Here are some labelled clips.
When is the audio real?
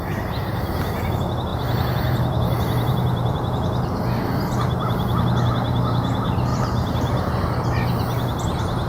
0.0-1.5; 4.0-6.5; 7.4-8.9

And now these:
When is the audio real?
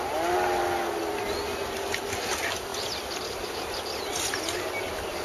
0.0-5.2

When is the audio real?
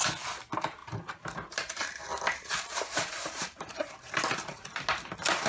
0.0-0.8; 4.1-5.5